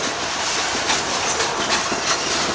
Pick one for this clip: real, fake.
real